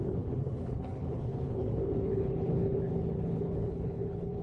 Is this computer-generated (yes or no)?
yes